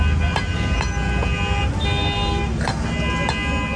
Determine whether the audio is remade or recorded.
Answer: recorded